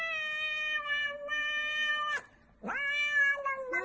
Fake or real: real